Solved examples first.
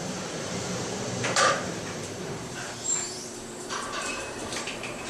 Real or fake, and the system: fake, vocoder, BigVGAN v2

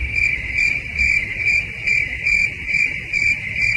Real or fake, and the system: fake, vocoder, BigVGAN v2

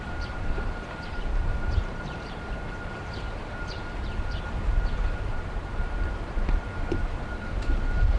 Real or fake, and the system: fake, vocoder, BigVGAN v2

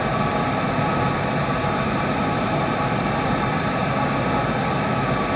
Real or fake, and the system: real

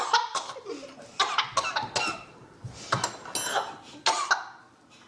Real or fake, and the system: real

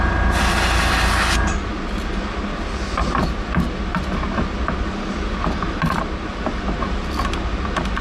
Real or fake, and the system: real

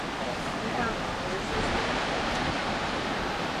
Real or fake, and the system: real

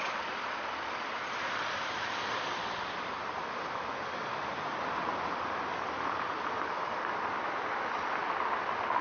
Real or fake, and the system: fake, vocoder, BigVGAN v2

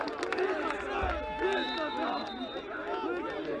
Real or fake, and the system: real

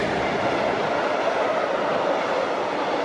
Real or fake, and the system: real